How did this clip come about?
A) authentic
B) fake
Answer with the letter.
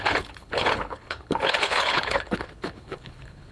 B